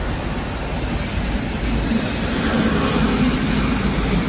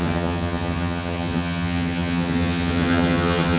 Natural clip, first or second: first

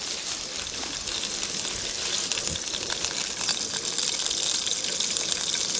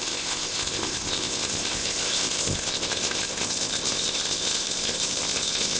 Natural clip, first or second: first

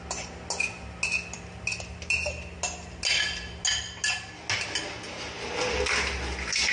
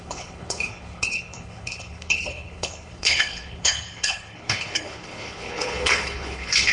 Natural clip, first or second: first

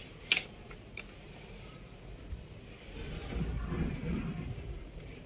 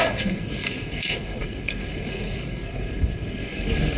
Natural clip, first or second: first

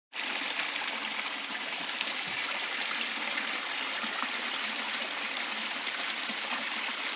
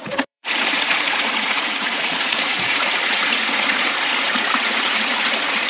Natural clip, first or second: first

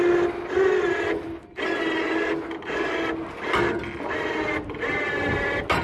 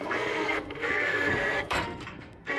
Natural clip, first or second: first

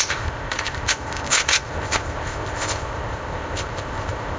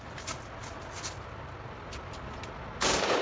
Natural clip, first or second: second